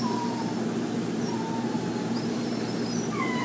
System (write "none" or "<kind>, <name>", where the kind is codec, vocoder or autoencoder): none